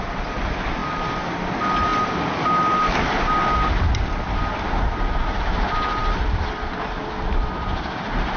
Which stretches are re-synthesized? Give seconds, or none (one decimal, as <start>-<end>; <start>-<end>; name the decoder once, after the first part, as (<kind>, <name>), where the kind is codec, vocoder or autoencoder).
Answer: none